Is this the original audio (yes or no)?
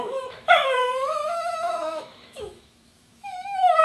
no